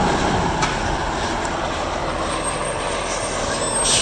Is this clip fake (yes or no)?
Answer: no